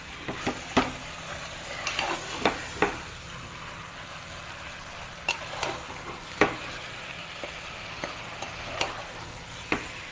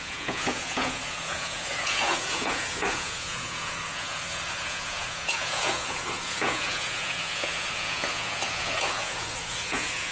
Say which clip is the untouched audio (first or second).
first